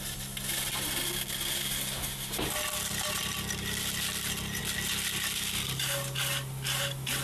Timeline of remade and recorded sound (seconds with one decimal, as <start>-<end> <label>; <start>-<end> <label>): 0.0-7.2 recorded